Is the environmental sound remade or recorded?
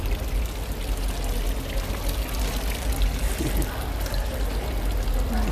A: recorded